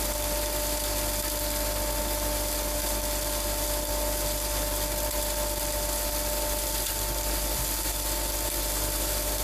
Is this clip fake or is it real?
real